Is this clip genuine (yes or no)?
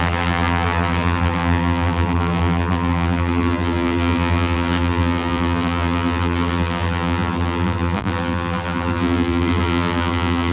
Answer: no